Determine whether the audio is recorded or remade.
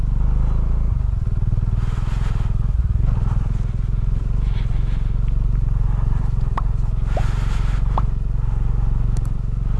recorded